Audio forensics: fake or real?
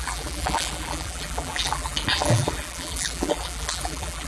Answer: fake